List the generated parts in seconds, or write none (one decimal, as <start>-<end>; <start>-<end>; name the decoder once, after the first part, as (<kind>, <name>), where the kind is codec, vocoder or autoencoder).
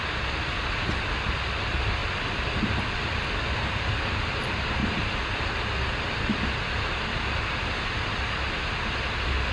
2.0-3.2 (vocoder, BigVGAN v2)